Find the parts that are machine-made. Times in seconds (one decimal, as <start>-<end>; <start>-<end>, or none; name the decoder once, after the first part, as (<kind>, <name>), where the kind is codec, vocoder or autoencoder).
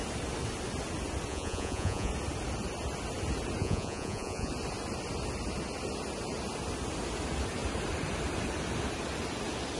1.3-2.1 (vocoder, Vocos); 3.6-4.5